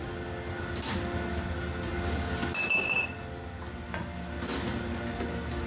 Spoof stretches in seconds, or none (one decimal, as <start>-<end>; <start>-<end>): none